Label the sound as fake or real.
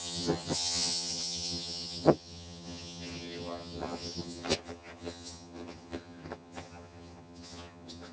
fake